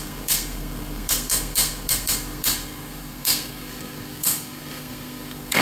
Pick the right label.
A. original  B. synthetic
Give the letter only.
B